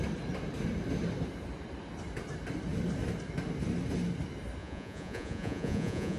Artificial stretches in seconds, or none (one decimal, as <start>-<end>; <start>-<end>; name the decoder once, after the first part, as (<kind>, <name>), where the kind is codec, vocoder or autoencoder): 4.6-6.2 (vocoder, Vocos)